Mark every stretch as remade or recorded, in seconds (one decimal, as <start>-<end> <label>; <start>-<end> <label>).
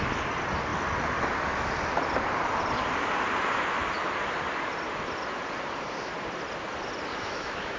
0.0-7.1 recorded; 7.1-7.8 remade